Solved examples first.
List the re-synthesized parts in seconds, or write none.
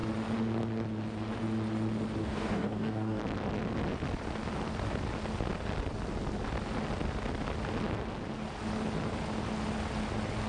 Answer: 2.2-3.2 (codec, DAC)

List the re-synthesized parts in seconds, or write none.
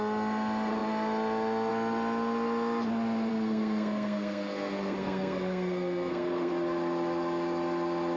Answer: 3.3-6.5 (codec, SNAC)